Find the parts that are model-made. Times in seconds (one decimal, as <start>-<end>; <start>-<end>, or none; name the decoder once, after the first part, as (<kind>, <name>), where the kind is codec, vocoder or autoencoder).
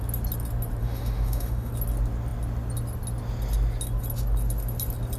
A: 0.8-1.7 (autoencoder, DAC-VAE)